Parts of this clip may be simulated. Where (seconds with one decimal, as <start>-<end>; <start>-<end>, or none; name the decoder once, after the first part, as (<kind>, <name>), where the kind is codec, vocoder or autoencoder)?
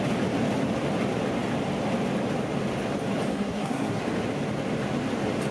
3.3-4.0 (codec, SNAC)